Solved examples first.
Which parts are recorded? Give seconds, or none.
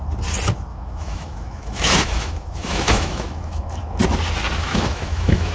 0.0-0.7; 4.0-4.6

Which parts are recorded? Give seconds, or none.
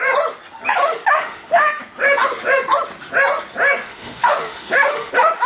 0.0-0.8; 1.8-3.9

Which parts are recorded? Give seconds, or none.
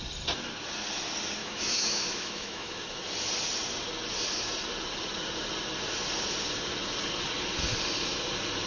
0.0-1.4; 3.0-8.7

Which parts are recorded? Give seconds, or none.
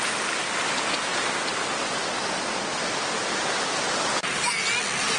0.0-5.2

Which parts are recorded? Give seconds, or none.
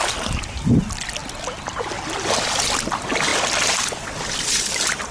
0.0-5.1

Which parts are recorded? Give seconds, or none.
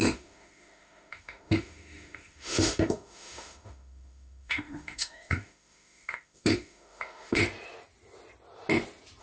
7.4-9.2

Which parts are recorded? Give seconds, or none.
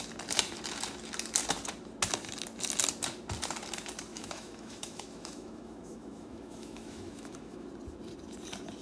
0.0-4.1; 7.7-8.8